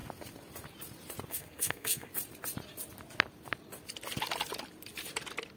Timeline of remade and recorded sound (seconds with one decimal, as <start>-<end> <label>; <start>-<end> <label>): 0.0-1.3 recorded; 1.3-2.1 remade; 2.1-5.6 recorded